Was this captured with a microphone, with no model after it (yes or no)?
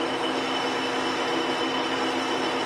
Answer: yes